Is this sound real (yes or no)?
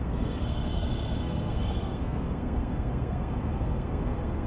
no